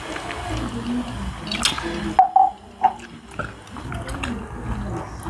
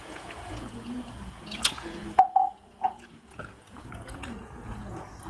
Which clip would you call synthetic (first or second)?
second